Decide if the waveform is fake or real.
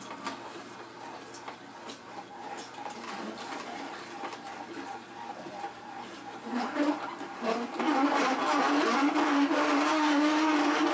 real